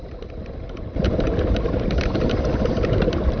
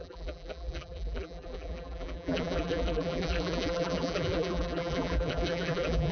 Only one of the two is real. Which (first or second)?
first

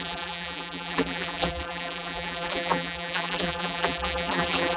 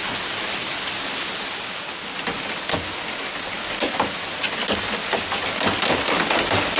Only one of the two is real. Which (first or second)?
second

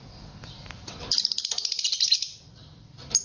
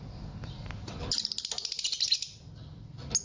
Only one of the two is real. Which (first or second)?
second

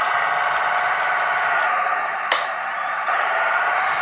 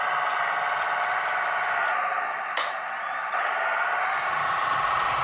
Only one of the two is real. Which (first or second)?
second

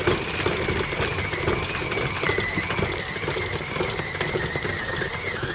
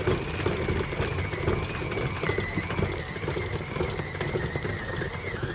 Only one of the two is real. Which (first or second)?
second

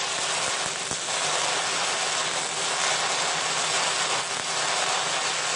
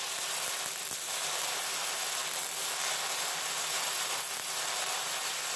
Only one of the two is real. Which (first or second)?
first